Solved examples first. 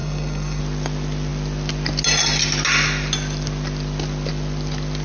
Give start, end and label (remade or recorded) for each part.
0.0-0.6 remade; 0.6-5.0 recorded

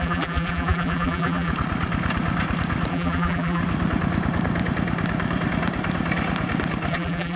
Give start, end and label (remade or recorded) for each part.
0.0-1.5 remade; 1.5-2.9 recorded; 2.9-3.6 remade; 3.6-6.9 recorded; 6.9-7.4 remade

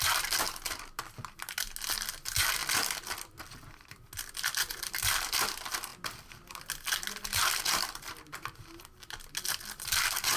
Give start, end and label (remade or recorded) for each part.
0.0-10.4 recorded

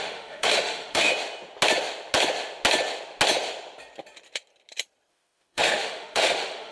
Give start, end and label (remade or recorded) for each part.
0.0-1.1 remade; 1.1-5.1 recorded; 5.1-6.7 remade